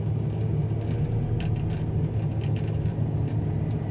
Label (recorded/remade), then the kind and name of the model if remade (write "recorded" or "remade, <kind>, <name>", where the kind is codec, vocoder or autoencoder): recorded